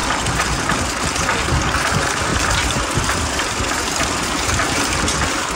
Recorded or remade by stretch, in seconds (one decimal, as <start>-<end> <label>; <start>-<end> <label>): 0.0-2.3 recorded; 2.3-4.1 remade; 4.1-5.6 recorded